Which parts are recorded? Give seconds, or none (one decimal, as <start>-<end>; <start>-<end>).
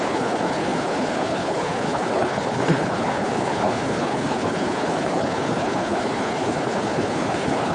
none